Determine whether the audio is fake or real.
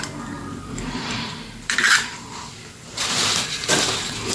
fake